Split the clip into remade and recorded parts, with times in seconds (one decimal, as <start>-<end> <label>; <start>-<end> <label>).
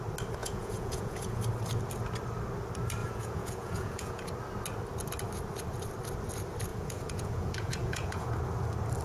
0.0-0.4 recorded; 0.4-1.4 remade; 1.4-3.0 recorded; 3.0-4.3 remade; 4.3-6.7 recorded; 6.7-8.3 remade; 8.3-9.0 recorded